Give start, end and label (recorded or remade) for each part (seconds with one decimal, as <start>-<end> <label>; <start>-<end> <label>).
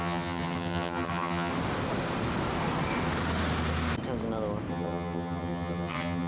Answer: 0.0-1.5 remade; 1.5-4.7 recorded; 4.7-6.3 remade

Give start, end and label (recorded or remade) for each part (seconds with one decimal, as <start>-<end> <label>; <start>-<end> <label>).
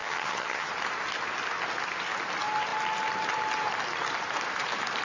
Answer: 0.0-0.7 remade; 0.7-5.0 recorded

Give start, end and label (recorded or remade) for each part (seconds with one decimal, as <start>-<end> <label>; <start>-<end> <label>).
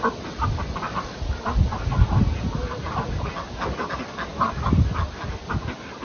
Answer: 0.0-6.0 recorded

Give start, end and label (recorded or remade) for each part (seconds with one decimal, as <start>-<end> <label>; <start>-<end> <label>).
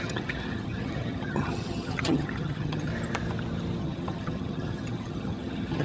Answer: 0.0-2.9 remade; 2.9-3.8 recorded; 3.8-5.8 remade